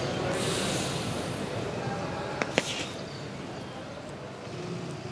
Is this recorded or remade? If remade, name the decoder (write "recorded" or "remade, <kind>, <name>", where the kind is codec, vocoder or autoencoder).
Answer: recorded